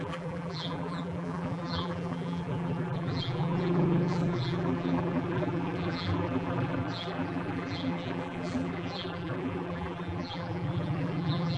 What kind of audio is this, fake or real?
fake